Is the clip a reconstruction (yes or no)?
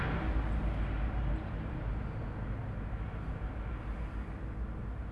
no